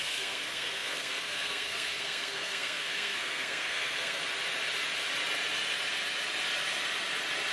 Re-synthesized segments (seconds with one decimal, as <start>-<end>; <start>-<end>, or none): 0.0-4.2